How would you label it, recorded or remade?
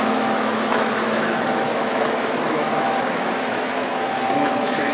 remade